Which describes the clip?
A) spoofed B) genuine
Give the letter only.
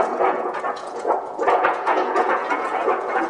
A